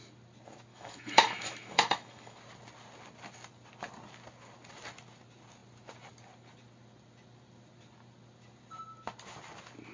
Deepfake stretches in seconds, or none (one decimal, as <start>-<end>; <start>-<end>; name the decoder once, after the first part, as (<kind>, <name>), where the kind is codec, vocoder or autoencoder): 0.7-2.4 (autoencoder, DAC-VAE)